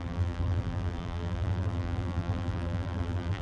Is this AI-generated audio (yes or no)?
yes